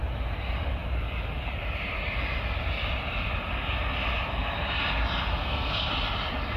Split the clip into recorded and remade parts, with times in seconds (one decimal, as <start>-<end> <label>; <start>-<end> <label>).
0.0-5.4 recorded; 5.4-5.9 remade; 5.9-6.6 recorded